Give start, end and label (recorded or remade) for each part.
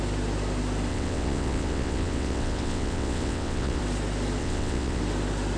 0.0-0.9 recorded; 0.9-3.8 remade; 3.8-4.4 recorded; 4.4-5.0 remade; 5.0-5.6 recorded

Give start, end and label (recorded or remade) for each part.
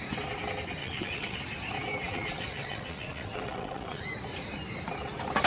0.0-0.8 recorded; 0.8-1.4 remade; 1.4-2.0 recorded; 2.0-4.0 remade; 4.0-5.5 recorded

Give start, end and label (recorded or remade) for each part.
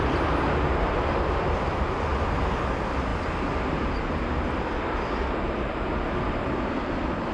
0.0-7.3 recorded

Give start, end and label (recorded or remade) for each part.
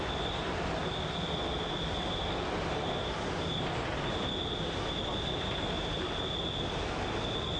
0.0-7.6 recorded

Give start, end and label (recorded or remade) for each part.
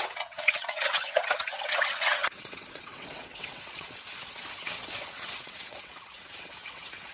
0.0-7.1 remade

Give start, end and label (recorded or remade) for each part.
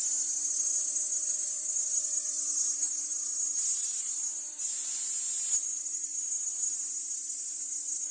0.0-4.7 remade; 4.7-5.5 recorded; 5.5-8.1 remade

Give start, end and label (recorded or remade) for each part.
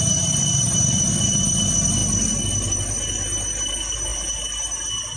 0.0-5.2 recorded